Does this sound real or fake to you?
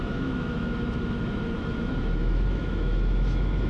fake